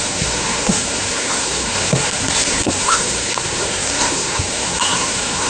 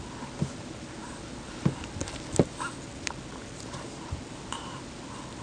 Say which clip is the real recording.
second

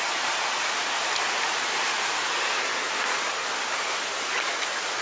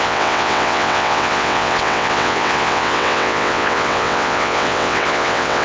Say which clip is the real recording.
first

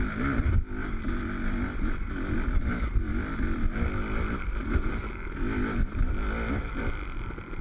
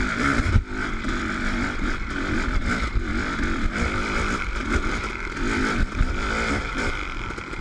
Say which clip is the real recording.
first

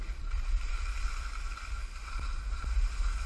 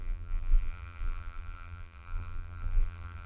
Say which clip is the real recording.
first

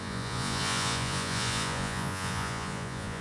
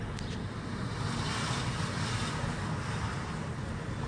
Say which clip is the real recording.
second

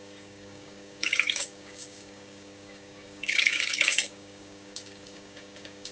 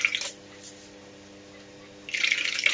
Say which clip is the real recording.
second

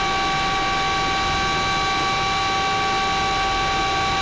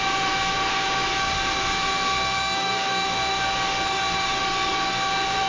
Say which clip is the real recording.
first